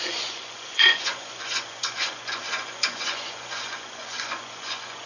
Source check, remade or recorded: remade